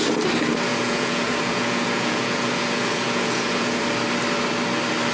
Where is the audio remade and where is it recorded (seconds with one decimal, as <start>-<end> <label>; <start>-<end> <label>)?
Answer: 0.0-0.7 recorded; 0.7-3.8 remade; 3.8-5.1 recorded